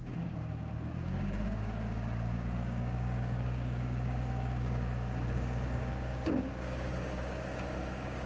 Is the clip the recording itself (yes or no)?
no